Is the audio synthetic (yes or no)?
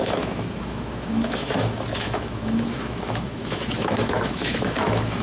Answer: yes